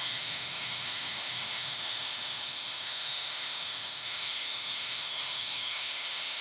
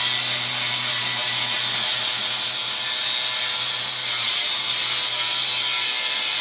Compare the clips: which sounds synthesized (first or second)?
first